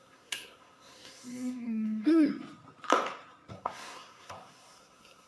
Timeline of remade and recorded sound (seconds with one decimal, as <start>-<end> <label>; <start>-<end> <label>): 0.0-2.3 remade; 2.3-3.5 recorded; 3.5-5.3 remade

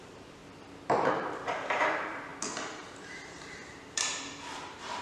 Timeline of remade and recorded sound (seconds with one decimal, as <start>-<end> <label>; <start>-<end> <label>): 0.0-0.4 remade; 0.4-1.1 recorded; 1.1-2.3 remade; 2.3-3.3 recorded; 3.3-5.0 remade